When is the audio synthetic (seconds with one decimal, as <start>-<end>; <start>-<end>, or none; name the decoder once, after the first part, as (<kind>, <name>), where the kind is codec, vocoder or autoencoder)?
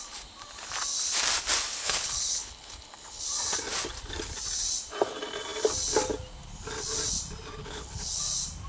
1.8-3.2 (codec, HILCodec); 7.6-8.2